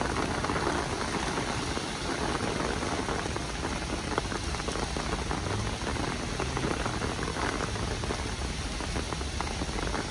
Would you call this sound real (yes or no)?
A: yes